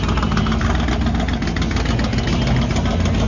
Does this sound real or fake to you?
real